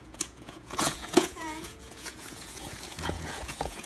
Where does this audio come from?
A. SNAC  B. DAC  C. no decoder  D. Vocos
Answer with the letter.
D